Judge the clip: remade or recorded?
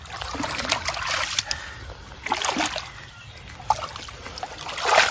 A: recorded